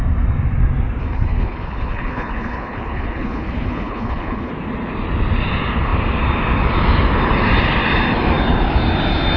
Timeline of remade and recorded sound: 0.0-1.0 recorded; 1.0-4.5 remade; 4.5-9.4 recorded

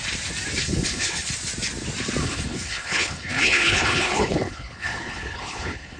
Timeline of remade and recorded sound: 0.0-0.6 recorded; 0.6-1.3 remade; 1.3-2.2 recorded; 2.2-6.0 remade